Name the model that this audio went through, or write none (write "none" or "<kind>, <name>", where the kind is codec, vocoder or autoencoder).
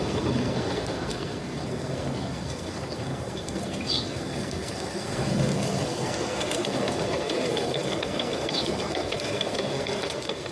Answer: codec, SNAC